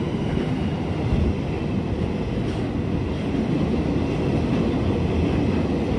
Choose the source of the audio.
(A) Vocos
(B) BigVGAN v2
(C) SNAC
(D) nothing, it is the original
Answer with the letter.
D